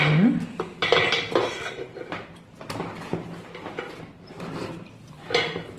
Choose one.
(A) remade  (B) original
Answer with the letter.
B